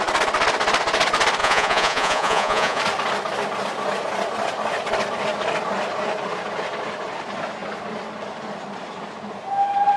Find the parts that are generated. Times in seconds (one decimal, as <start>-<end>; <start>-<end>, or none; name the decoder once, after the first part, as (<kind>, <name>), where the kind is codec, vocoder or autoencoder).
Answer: 1.4-2.8 (vocoder, Vocos)